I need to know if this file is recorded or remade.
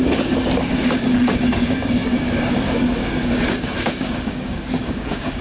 remade